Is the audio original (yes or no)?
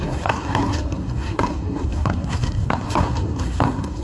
no